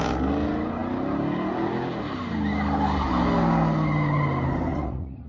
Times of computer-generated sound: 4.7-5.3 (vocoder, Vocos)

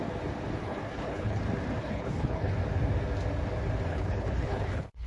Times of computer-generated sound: 0.6-1.4 (codec, HILCodec); 1.8-2.5; 3.9-5.1